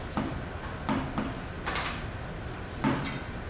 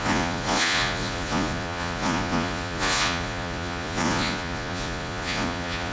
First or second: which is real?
first